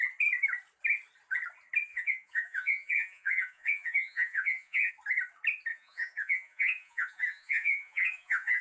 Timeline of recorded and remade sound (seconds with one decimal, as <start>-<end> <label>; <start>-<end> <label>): 0.0-1.9 recorded; 1.9-4.9 remade; 4.9-5.7 recorded; 5.7-8.6 remade